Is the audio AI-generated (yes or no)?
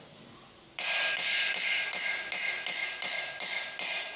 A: no